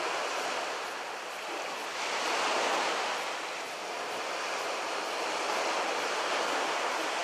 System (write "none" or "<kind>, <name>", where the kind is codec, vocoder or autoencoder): none